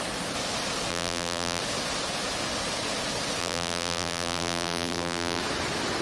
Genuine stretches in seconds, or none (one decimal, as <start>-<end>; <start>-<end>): 0.0-0.9; 1.6-3.4; 5.4-6.0